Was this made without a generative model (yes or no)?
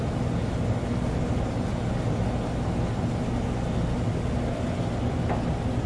yes